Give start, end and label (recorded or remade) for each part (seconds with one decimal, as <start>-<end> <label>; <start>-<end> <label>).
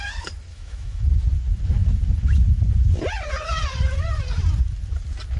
0.0-0.5 recorded; 0.5-1.0 remade; 1.0-5.4 recorded